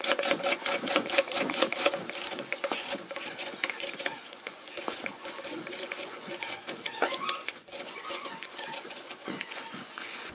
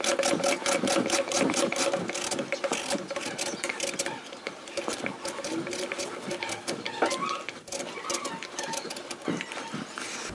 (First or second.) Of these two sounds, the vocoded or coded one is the first